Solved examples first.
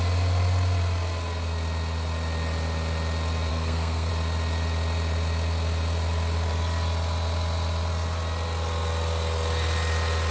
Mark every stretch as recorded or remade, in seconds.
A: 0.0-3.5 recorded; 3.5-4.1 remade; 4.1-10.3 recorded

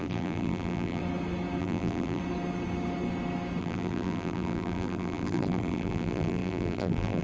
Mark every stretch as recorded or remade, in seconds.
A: 0.0-1.0 remade; 1.0-1.6 recorded; 1.6-2.2 remade; 2.2-3.6 recorded; 3.6-7.2 remade